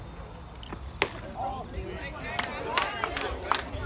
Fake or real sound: real